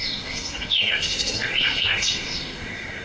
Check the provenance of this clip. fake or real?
fake